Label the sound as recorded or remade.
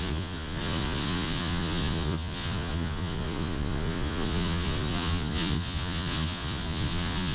remade